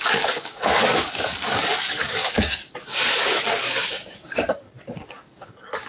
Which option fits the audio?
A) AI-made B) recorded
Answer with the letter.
A